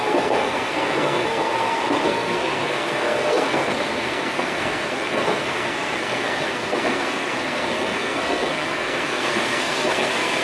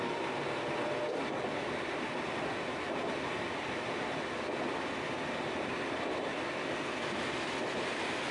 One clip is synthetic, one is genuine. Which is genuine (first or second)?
second